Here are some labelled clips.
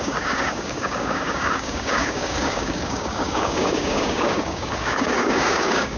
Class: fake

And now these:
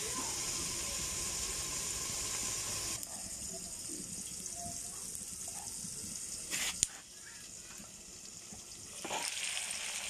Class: real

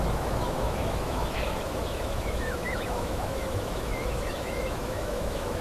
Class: fake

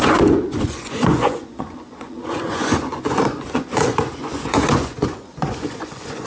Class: fake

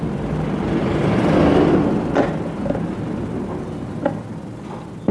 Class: real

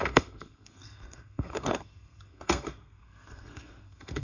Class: fake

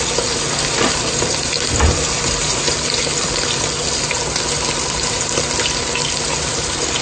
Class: real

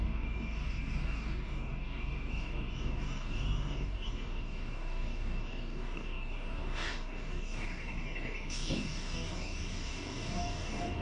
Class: fake